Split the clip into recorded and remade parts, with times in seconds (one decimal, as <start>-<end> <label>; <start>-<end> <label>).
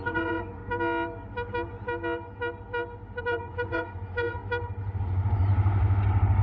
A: 0.0-0.6 remade; 0.6-3.2 recorded; 3.2-4.4 remade; 4.4-5.0 recorded; 5.0-5.5 remade; 5.5-6.4 recorded